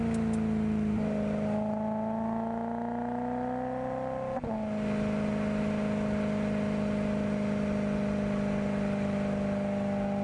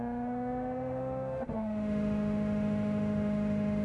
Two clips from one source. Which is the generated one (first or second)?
second